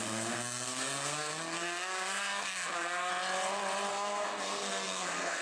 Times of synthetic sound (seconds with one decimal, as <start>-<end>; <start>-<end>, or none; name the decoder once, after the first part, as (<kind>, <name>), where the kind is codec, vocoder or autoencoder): 0.0-3.1 (codec, SNAC); 3.9-5.4